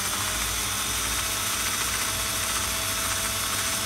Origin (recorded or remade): recorded